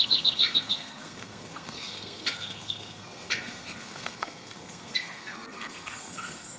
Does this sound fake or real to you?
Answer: fake